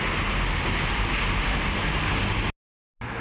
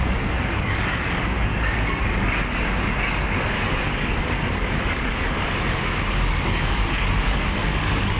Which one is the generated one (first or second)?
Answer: second